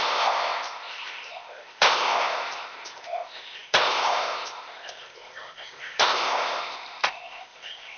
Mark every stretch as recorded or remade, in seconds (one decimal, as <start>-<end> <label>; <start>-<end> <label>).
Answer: 0.0-8.0 remade